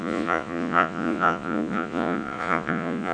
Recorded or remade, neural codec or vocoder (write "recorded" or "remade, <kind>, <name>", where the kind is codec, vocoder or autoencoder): remade, vocoder, Vocos